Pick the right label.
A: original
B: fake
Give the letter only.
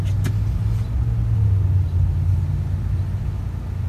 A